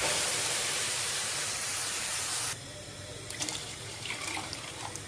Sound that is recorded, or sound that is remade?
remade